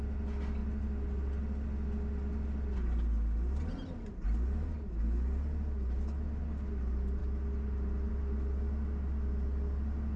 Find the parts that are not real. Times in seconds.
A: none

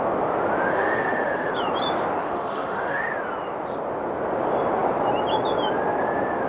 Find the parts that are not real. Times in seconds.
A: 0.7-1.5 (autoencoder, DAC-VAE); 2.2-3.0

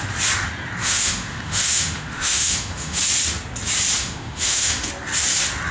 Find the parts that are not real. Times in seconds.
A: 0.8-3.0 (autoencoder, DAC-VAE); 4.0-4.9

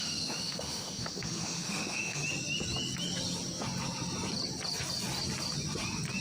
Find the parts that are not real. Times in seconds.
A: 0.0-2.2 (autoencoder, DAC-VAE)